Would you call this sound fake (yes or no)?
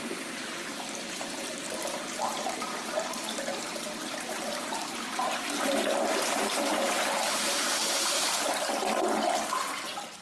yes